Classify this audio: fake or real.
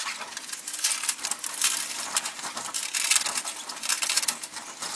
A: real